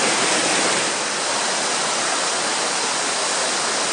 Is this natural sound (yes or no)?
yes